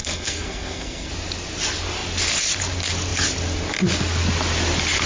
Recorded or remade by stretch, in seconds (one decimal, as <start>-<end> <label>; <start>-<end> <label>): 0.0-1.1 remade; 1.1-5.1 recorded